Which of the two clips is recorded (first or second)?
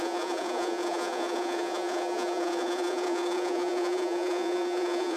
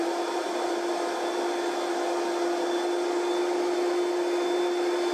second